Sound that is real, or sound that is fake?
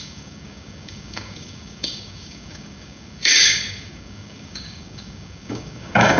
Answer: fake